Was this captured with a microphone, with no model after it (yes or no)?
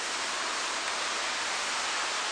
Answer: yes